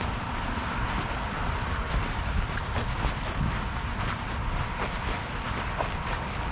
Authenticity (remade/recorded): recorded